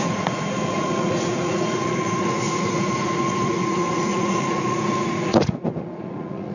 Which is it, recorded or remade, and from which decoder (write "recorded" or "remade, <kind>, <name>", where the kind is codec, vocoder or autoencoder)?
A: remade, vocoder, Vocos